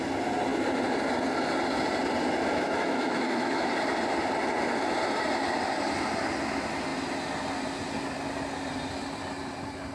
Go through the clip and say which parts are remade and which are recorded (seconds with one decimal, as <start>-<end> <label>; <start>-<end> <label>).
0.0-2.5 recorded; 2.5-3.7 remade; 3.7-9.9 recorded